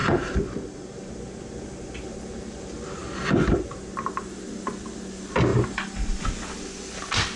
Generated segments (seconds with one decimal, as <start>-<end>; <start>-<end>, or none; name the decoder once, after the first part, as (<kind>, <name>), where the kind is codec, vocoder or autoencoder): 0.0-1.1 (vocoder, BigVGAN v2); 5.5-6.2